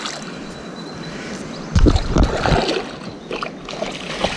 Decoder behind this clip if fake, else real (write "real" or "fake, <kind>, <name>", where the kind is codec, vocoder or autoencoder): real